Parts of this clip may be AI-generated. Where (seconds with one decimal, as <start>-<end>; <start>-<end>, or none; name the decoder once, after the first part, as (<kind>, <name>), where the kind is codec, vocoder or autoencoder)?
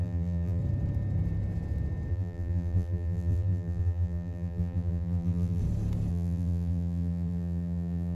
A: 0.0-0.6 (vocoder, BigVGAN v2); 2.1-5.6; 6.1-8.1